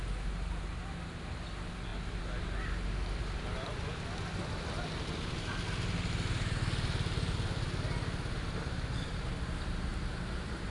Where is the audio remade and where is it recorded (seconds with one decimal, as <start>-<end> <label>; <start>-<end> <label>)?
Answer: 0.0-9.9 recorded; 9.9-10.7 remade